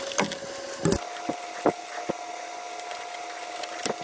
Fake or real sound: real